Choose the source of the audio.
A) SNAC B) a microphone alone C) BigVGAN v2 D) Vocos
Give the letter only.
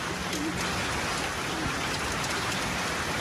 B